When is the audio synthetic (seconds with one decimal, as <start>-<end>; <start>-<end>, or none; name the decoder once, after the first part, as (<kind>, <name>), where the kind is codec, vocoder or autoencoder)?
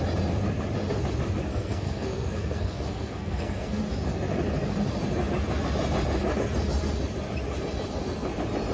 1.5-3.8 (codec, SNAC)